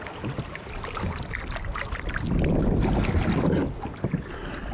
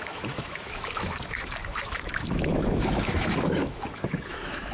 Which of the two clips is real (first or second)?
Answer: first